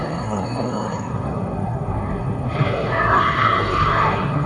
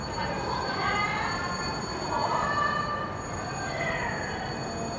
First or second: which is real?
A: second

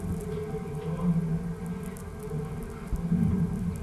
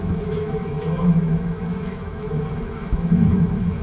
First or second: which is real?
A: first